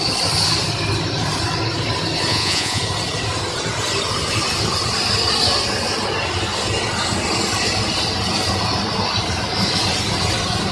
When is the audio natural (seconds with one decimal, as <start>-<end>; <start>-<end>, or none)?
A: 0.0-2.3; 2.8-10.7